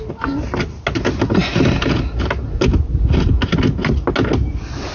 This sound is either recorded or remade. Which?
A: recorded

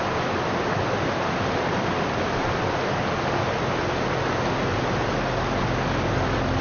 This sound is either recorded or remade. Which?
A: recorded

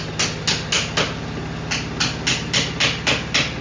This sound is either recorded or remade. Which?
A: recorded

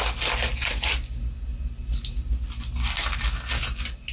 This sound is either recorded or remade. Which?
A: recorded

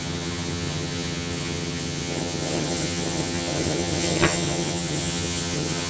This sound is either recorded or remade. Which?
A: remade